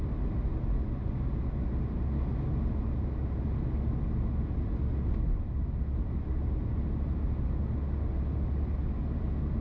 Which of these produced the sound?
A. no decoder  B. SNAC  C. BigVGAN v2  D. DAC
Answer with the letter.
A